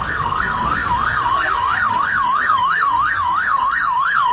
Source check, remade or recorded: remade